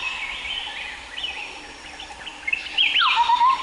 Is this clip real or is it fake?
real